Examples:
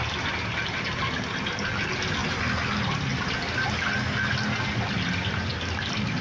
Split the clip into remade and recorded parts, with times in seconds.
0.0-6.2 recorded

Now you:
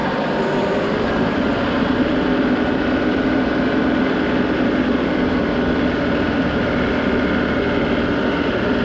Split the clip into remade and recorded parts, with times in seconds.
0.0-8.8 remade

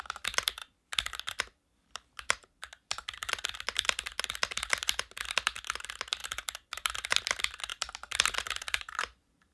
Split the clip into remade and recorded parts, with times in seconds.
0.0-0.6 recorded; 0.6-4.2 remade; 4.2-6.2 recorded; 6.2-6.9 remade; 6.9-9.5 recorded

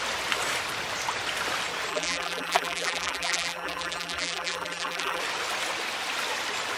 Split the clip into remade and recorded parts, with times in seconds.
0.0-1.9 recorded; 1.9-5.2 remade; 5.2-6.8 recorded

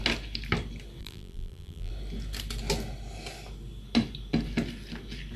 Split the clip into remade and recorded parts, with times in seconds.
0.0-1.0 recorded; 1.0-1.9 remade; 1.9-5.4 recorded